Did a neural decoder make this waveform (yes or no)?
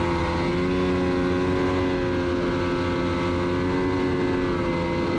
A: no